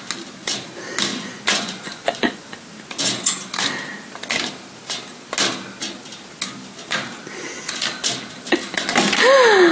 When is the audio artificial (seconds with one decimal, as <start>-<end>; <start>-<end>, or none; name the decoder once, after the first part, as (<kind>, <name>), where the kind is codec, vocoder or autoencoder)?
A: 1.1-2.6 (vocoder, Vocos)